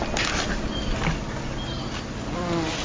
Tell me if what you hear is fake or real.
real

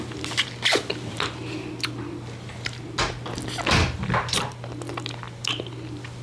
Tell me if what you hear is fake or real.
real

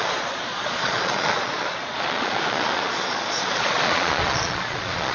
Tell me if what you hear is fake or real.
fake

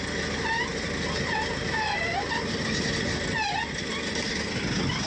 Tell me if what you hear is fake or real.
real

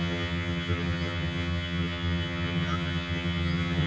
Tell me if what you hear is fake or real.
fake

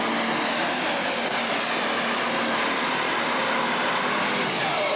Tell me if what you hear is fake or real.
real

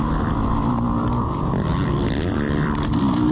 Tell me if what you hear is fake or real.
fake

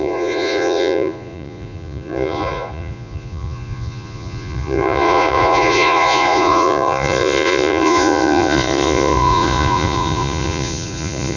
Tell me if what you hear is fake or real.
fake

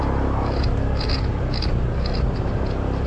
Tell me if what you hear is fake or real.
real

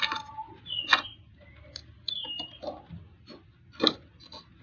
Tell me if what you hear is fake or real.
real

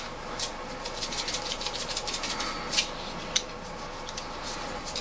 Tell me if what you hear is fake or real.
real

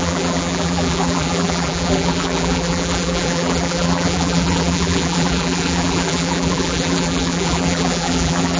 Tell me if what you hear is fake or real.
fake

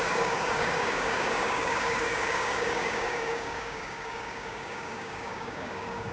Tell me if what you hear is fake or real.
fake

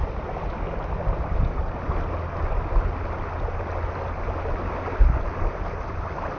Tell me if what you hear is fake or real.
real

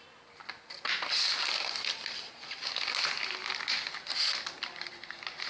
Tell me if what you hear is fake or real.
real